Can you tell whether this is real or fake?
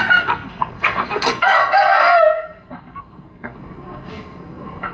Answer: fake